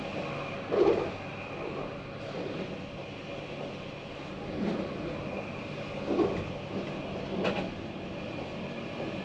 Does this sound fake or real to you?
real